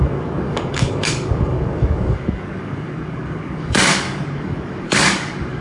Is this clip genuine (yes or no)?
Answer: no